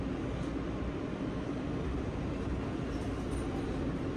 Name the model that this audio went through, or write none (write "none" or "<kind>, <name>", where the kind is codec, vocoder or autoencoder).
none